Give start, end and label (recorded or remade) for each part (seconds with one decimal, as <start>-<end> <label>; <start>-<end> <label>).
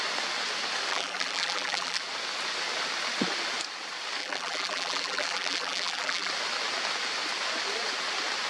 0.0-0.9 recorded; 0.9-2.0 remade; 2.0-4.2 recorded; 4.2-6.3 remade; 6.3-8.5 recorded